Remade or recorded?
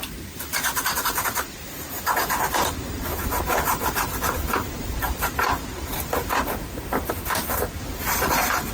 remade